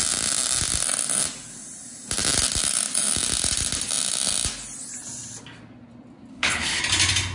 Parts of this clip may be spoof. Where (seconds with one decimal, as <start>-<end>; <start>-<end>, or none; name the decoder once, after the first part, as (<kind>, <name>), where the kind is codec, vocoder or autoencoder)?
6.3-6.8 (codec, HILCodec)